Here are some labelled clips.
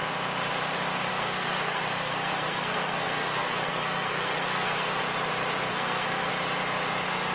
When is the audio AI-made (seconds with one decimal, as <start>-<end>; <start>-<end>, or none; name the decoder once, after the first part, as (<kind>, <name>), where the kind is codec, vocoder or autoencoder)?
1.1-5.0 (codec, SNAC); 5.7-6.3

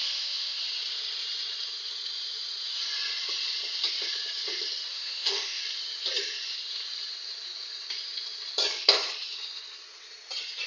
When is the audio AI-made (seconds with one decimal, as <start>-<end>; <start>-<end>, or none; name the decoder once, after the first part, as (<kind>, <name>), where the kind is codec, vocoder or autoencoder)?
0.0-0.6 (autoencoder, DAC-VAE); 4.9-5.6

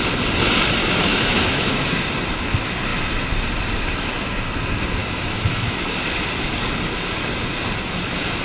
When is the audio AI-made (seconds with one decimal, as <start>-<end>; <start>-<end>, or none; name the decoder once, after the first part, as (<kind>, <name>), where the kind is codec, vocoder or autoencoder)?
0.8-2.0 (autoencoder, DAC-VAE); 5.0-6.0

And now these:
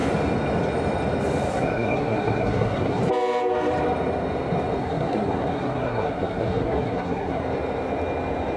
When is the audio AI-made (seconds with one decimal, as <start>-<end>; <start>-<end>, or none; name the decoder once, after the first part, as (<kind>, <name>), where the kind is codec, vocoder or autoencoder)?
1.5-3.0 (codec, SNAC); 4.8-7.4

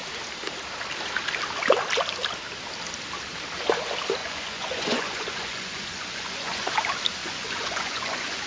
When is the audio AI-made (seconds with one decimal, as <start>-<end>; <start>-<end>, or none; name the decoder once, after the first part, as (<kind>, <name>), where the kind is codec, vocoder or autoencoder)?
4.2-6.7 (vocoder, Vocos); 7.2-8.5

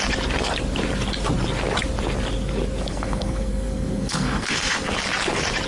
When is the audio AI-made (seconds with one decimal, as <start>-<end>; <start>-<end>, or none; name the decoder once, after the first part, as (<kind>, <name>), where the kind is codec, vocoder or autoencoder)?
2.9-4.7 (codec, SNAC)

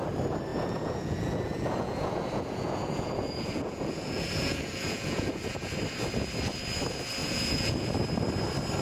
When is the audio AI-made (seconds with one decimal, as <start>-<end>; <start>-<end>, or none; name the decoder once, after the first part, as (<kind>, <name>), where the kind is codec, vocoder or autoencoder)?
0.5-5.7 (vocoder, Vocos); 7.2-7.9